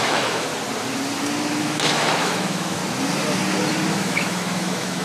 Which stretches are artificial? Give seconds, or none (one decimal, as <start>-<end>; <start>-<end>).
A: 0.0-0.5; 1.6-2.8; 3.9-5.0